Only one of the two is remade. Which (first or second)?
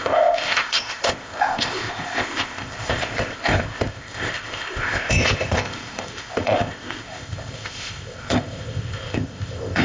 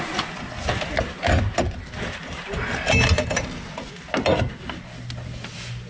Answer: first